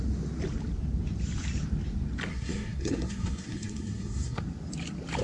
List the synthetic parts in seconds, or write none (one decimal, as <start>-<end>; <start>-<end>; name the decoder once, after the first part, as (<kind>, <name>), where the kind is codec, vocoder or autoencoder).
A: 2.3-4.4 (codec, SNAC)